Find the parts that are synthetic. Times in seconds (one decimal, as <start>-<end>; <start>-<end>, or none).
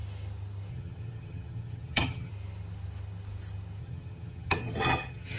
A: 0.7-2.3; 3.8-5.4